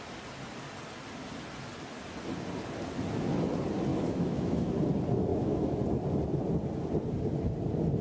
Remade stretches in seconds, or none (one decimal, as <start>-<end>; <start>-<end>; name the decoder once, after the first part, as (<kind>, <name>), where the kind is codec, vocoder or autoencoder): 3.9-4.7 (autoencoder, DAC-VAE); 5.3-5.8